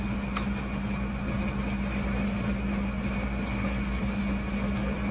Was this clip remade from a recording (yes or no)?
no